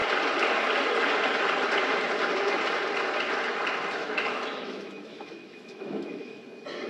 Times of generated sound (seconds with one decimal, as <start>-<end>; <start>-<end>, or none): 4.0-6.4